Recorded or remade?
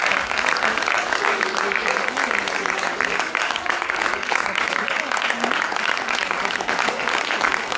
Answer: remade